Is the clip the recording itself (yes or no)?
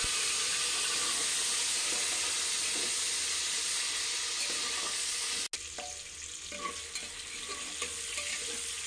yes